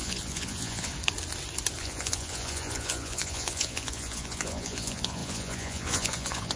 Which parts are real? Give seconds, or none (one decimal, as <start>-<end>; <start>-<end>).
0.9-1.8